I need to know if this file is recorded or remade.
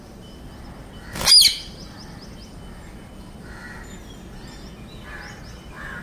recorded